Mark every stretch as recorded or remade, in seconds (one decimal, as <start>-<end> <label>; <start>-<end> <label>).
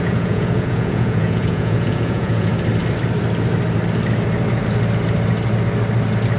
0.0-2.5 remade; 2.5-6.4 recorded